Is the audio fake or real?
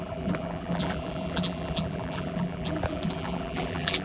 fake